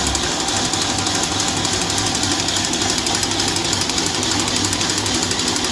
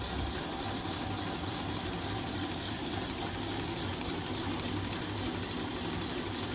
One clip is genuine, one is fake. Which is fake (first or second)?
second